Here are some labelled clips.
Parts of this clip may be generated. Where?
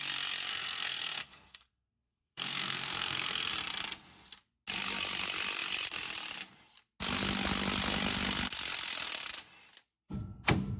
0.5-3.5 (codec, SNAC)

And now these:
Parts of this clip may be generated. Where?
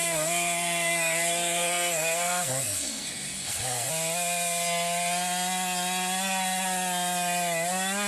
0.0-3.9 (codec, SNAC)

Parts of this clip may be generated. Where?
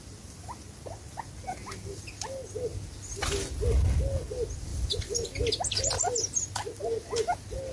none